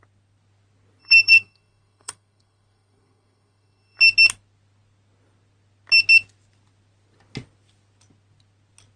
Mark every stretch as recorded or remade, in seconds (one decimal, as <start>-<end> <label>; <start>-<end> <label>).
0.0-1.0 recorded; 1.0-4.0 remade; 4.0-9.0 recorded